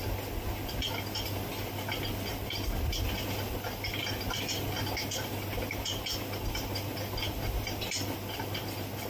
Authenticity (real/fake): real